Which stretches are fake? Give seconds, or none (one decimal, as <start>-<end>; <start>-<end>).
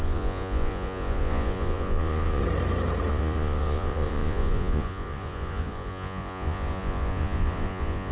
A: 0.0-2.4; 3.1-8.1